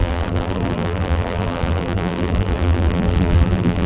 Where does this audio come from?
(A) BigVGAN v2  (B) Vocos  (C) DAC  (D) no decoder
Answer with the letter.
A